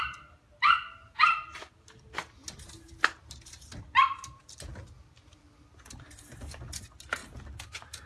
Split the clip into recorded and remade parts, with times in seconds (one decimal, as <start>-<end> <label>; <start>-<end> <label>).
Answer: 0.0-8.1 recorded